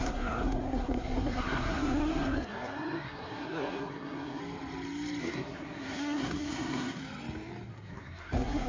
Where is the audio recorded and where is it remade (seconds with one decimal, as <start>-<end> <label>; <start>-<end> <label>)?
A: 0.0-4.4 remade; 4.4-5.2 recorded; 5.2-7.0 remade; 7.0-7.7 recorded; 7.7-8.7 remade